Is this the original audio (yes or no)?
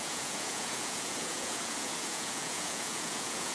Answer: no